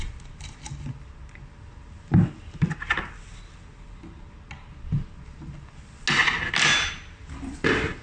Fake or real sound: real